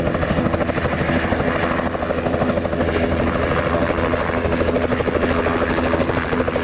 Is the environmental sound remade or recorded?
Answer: recorded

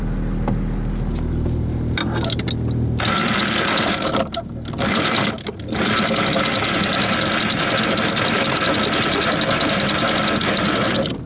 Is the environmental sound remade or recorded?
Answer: recorded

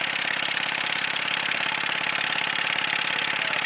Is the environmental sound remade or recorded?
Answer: remade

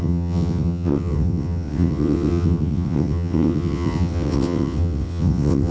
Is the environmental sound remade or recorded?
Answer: remade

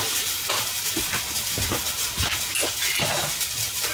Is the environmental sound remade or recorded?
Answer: recorded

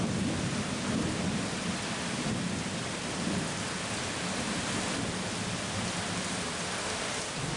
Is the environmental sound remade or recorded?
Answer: remade